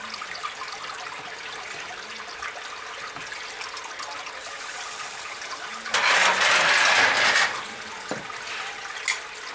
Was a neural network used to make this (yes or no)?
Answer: no